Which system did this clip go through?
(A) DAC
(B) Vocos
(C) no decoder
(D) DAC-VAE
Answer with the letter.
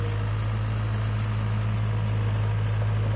C